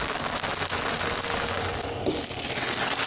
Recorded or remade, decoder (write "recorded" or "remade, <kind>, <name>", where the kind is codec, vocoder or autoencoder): recorded